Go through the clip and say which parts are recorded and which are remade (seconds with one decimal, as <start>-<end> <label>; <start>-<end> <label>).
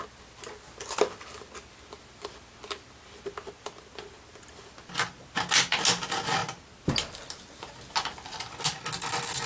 0.0-9.5 recorded